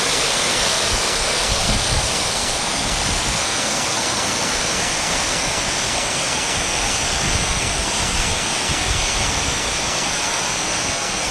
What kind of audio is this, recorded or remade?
remade